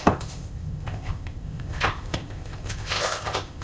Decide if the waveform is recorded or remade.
remade